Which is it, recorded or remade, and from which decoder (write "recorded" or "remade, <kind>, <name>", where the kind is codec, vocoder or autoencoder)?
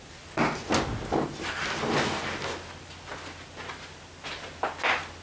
recorded